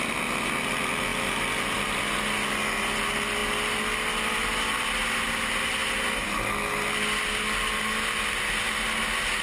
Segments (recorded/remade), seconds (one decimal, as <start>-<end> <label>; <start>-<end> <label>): 0.0-9.4 recorded